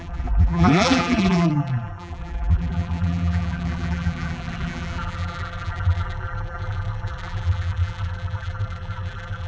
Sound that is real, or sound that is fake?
fake